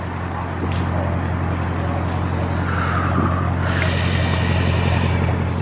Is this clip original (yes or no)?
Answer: yes